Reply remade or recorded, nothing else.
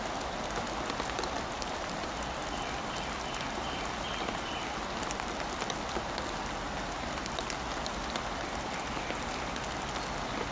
recorded